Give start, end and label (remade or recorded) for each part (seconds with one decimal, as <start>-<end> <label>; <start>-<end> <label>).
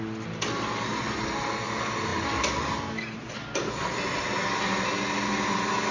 0.0-2.1 recorded; 2.1-3.7 remade; 3.7-5.9 recorded